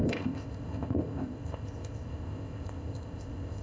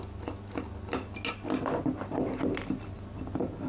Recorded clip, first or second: second